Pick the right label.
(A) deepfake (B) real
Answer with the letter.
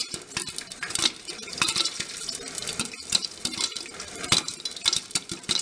B